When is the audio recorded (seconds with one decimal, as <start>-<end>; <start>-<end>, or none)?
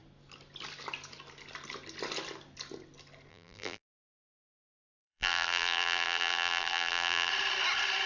0.0-3.3; 4.2-4.8; 7.3-8.1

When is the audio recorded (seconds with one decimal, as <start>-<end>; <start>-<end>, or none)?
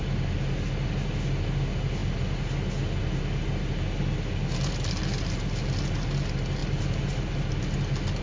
0.0-8.2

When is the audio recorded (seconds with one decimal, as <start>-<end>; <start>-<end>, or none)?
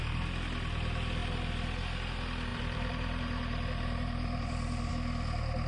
0.0-2.5; 4.9-5.7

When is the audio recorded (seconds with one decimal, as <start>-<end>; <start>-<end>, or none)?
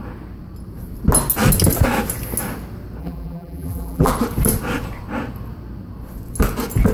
0.0-3.0; 4.1-6.9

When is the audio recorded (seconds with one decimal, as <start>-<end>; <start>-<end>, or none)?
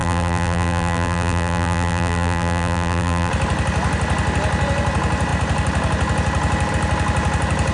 3.3-7.7